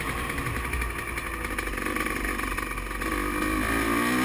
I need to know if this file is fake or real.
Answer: real